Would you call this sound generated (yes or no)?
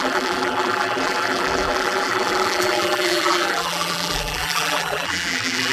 yes